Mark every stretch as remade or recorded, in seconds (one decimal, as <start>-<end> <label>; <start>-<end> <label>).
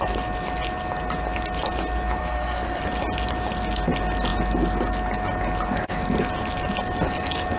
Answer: 0.0-2.2 recorded; 2.2-2.8 remade; 2.8-7.6 recorded